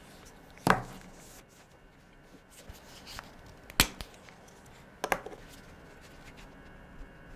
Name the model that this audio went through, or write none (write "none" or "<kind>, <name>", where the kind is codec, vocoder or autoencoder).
none